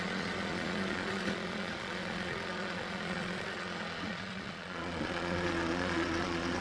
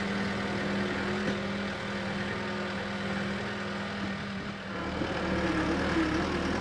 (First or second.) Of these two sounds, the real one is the second